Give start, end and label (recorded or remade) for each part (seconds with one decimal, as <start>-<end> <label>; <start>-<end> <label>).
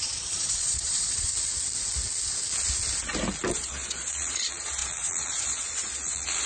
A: 0.0-1.3 remade; 1.3-3.5 recorded; 3.5-6.5 remade